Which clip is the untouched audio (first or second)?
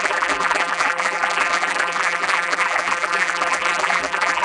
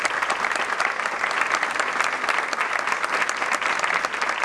second